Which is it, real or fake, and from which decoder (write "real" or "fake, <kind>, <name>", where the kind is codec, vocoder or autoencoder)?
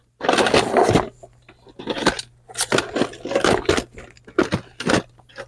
real